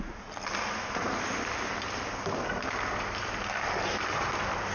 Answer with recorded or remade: recorded